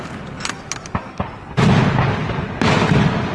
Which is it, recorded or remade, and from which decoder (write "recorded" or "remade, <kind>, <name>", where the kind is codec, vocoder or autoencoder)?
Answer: recorded